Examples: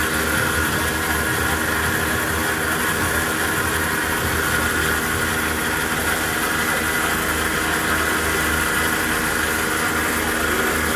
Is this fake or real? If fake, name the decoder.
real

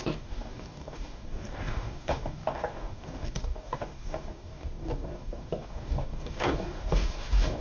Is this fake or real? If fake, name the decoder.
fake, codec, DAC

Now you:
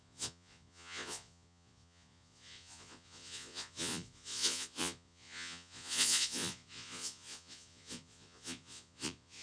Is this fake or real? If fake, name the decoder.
fake, vocoder, Vocos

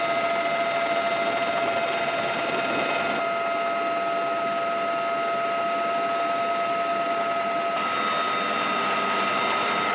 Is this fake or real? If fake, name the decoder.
real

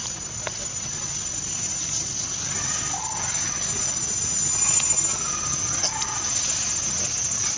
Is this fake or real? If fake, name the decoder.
real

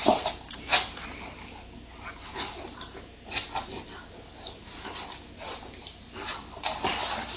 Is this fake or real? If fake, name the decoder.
real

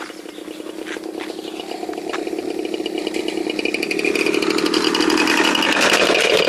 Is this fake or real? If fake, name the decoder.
real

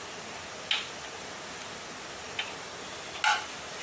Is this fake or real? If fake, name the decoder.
real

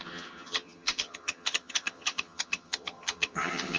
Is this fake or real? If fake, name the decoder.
fake, vocoder, HiFi-GAN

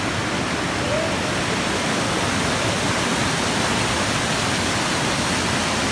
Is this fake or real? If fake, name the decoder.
real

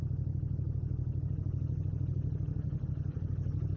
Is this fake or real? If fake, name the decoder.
real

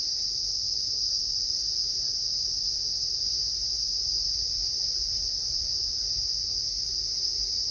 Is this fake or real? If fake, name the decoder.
real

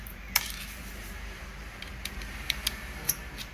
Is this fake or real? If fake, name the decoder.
fake, vocoder, BigVGAN v2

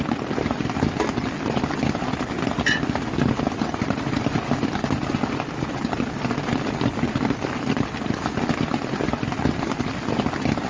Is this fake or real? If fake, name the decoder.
real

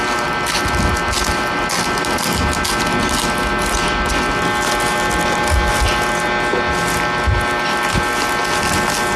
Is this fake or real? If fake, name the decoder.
real